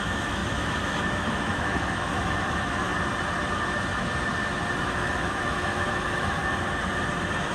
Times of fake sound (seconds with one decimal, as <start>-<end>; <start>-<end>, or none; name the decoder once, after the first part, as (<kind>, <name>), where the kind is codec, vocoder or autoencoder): 0.0-2.9 (autoencoder, DAC-VAE); 4.8-6.4